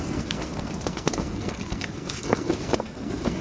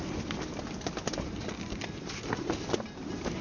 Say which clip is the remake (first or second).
first